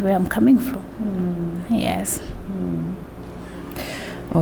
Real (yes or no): yes